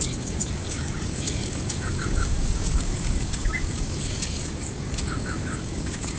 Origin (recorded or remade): remade